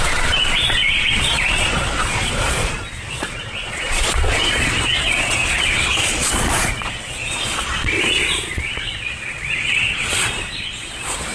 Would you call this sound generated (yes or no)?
yes